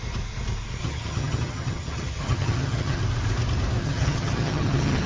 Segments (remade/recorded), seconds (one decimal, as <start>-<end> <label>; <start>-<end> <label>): 0.0-0.8 recorded; 0.8-3.0 remade; 3.0-3.8 recorded; 3.8-5.1 remade